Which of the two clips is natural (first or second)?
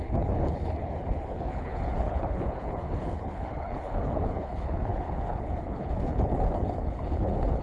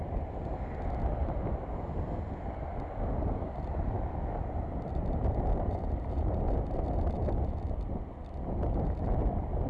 second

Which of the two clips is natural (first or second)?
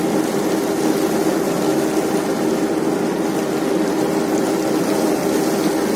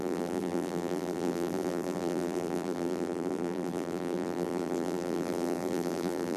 first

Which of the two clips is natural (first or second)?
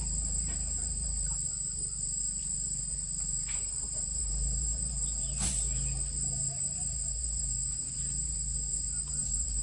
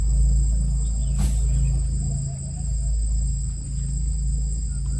second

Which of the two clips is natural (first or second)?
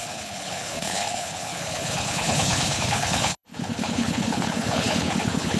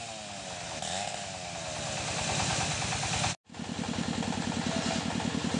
second